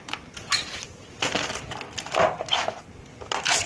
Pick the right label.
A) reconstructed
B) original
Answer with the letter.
B